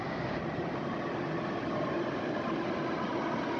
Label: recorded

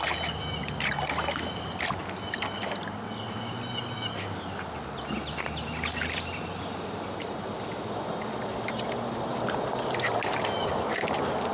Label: recorded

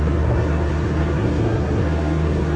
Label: remade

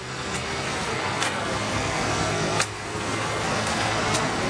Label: remade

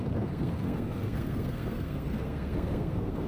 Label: remade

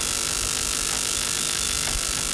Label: recorded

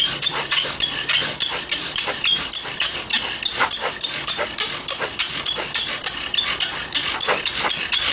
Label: recorded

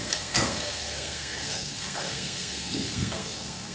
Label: remade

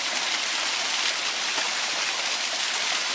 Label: recorded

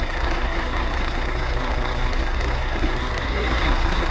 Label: remade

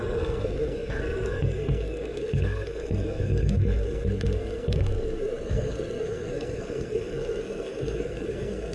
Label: remade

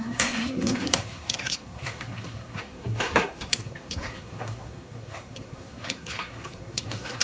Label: remade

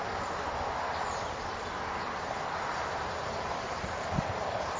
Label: recorded